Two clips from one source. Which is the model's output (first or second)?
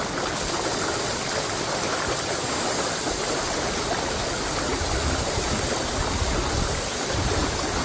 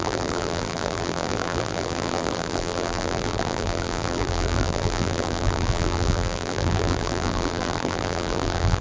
second